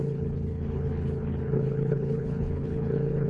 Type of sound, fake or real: fake